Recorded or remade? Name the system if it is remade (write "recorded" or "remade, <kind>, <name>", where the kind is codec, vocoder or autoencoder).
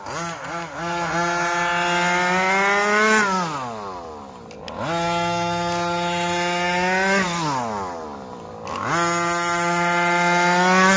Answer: recorded